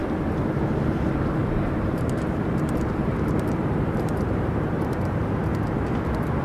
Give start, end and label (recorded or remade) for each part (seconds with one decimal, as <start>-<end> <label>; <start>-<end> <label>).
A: 0.0-1.4 recorded; 1.4-5.2 remade; 5.2-6.4 recorded